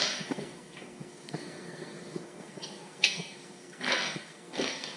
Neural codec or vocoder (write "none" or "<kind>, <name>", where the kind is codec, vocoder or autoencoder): codec, SNAC